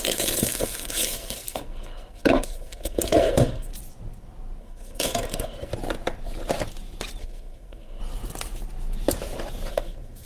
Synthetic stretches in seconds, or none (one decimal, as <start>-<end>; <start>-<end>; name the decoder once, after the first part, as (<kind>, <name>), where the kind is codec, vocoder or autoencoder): 0.0-3.7 (codec, SNAC); 4.6-5.7; 7.2-8.0; 9.7-10.3